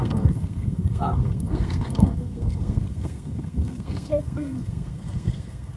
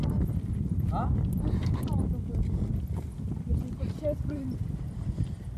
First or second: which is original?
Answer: second